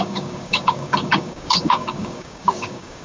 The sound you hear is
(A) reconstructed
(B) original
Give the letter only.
A